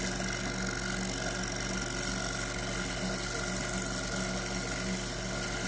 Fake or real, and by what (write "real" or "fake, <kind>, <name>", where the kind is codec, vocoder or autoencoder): real